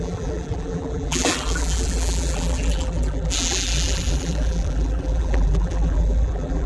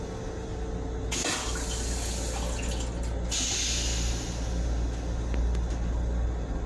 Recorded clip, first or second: second